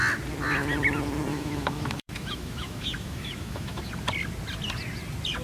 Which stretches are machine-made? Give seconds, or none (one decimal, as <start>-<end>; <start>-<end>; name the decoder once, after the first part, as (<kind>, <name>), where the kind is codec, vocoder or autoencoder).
1.3-3.9 (autoencoder, DAC-VAE)